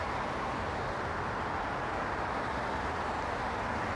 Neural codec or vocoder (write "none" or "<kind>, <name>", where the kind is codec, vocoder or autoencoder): none